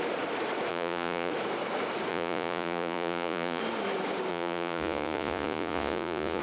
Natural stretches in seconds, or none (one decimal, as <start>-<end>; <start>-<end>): 0.0-0.7; 1.3-2.1; 3.6-4.3